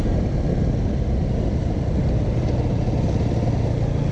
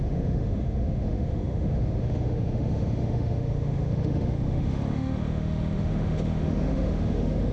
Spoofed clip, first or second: second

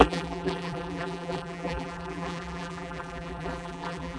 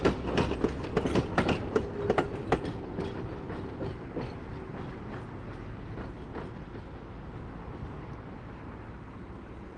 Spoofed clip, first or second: first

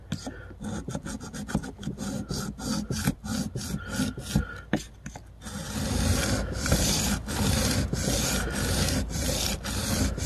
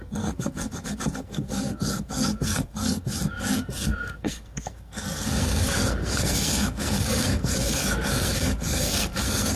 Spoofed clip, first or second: second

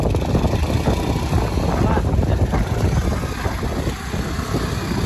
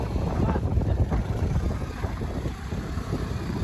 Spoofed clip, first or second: second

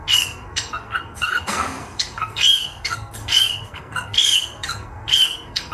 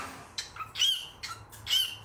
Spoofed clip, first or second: first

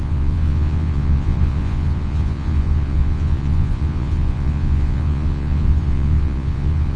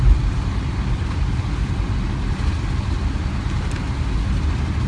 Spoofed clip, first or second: first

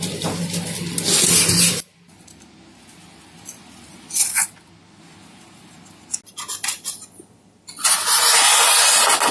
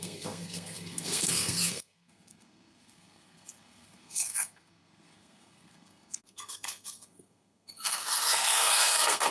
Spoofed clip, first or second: second